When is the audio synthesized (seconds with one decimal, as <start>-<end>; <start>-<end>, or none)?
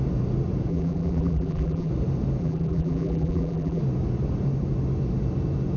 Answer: 0.7-1.9; 2.4-3.8